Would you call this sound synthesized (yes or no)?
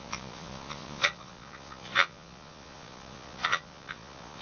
yes